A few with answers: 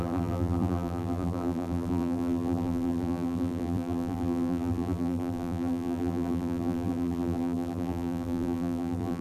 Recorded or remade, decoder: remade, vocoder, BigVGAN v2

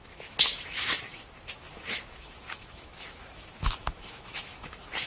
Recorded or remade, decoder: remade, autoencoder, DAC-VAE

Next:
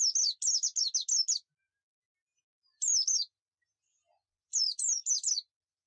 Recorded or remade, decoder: recorded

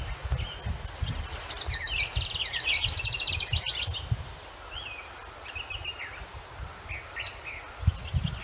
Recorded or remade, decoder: recorded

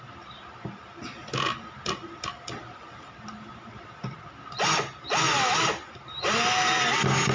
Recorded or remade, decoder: recorded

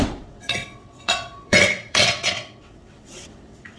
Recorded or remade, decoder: remade, vocoder, WaveNeXt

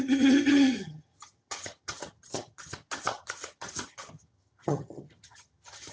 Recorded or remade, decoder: remade, vocoder, HiFi-GAN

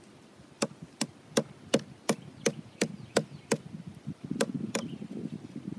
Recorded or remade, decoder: recorded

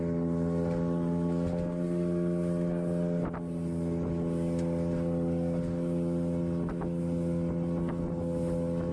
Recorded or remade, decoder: recorded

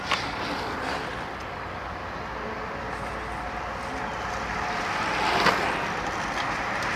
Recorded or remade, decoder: recorded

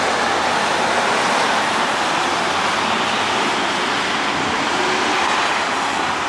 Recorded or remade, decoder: remade, vocoder, BigVGAN v2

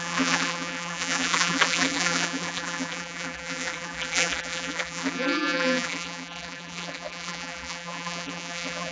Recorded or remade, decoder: remade, vocoder, BigVGAN v2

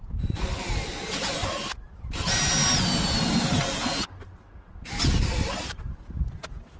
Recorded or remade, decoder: recorded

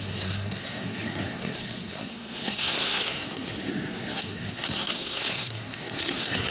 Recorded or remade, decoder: remade, codec, SNAC